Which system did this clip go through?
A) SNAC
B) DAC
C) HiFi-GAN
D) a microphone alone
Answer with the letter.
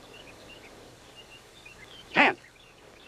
B